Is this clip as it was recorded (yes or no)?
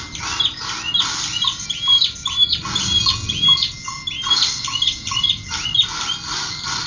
yes